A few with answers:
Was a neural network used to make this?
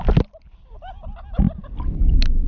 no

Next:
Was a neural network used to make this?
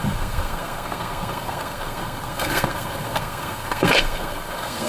yes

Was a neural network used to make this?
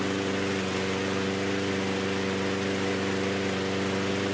no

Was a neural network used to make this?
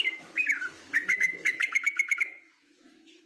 yes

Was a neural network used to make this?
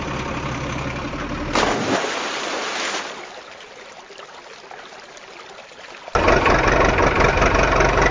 no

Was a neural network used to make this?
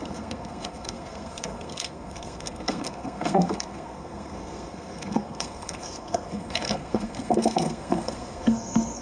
yes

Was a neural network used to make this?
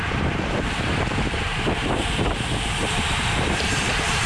yes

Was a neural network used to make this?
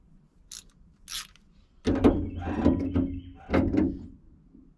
no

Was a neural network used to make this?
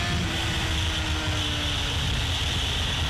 no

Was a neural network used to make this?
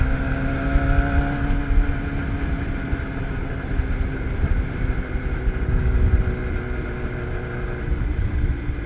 no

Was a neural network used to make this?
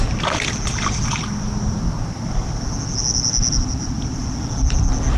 no